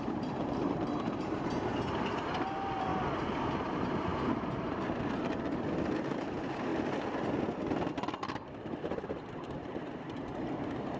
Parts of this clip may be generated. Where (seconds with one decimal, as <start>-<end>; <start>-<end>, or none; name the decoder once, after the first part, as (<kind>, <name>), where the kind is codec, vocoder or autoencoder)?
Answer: 0.0-2.9 (vocoder, BigVGAN v2); 3.6-4.1; 5.0-6.7; 8.6-11.0